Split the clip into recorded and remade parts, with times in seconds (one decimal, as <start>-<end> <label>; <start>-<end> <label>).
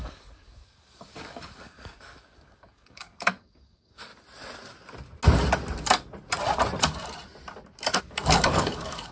0.0-4.1 remade; 4.1-8.0 recorded; 8.0-9.1 remade